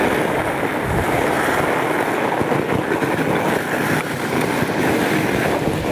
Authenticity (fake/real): real